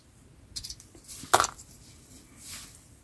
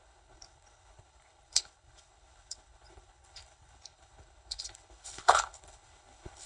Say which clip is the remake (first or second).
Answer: second